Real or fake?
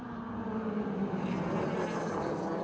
fake